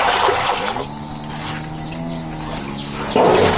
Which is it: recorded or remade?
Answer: recorded